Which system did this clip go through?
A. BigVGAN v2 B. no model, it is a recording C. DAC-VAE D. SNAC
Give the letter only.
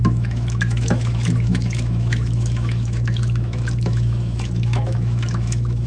C